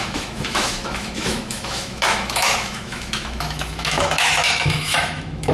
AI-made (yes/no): yes